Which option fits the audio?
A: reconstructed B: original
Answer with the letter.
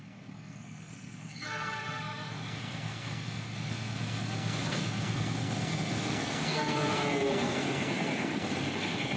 A